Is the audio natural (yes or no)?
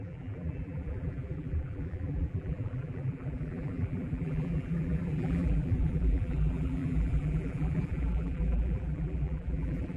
no